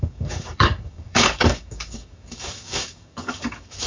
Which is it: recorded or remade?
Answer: remade